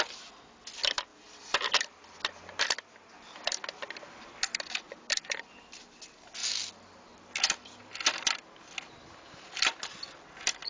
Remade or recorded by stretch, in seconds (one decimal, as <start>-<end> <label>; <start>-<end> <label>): 0.0-10.7 recorded